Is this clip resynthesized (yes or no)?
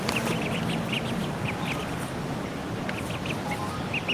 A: no